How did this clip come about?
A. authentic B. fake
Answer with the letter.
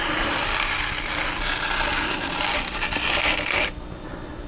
A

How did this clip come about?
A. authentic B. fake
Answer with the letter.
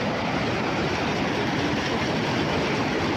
A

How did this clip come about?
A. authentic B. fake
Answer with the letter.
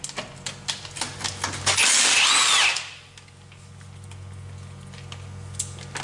A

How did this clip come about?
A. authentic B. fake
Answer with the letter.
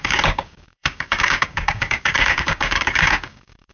B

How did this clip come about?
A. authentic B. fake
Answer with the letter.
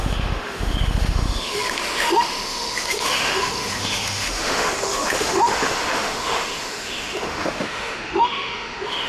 B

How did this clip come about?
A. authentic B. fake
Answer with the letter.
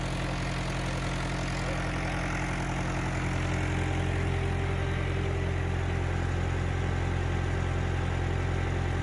A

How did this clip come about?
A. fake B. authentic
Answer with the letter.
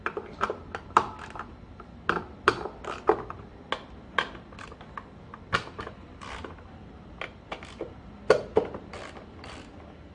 B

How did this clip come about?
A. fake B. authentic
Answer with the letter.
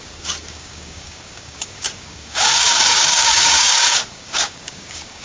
A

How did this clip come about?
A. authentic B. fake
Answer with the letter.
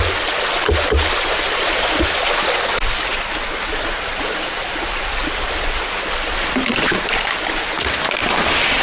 A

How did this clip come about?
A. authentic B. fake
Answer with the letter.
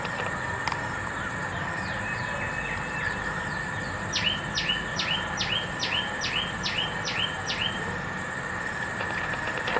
A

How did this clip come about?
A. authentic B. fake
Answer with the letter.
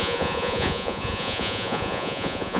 B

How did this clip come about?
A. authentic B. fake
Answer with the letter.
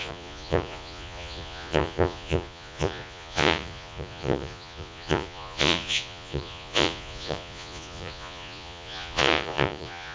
B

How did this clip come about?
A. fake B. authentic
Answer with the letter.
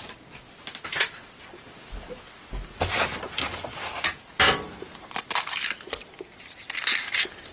B